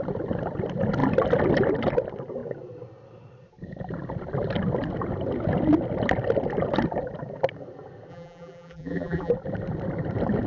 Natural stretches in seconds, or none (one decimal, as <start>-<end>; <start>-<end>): 0.0-8.1; 9.3-10.5